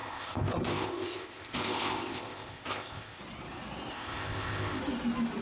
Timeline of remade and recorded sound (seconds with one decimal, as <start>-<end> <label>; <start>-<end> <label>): 0.0-3.2 remade; 3.2-3.9 recorded; 3.9-4.8 remade; 4.8-5.4 recorded